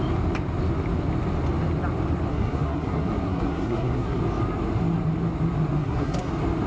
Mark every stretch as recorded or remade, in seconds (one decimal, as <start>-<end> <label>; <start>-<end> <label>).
0.0-2.3 recorded; 2.3-4.2 remade; 4.2-5.8 recorded; 5.8-6.3 remade; 6.3-6.7 recorded